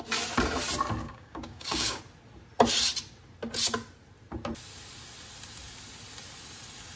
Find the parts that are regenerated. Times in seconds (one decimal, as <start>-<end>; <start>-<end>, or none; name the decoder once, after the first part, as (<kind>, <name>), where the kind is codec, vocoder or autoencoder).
1.0-2.0 (codec, DAC)